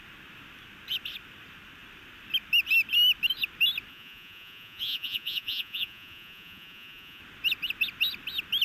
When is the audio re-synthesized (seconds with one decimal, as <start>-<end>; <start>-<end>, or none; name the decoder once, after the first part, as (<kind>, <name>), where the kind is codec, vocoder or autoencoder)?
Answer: 3.9-7.2 (vocoder, Vocos)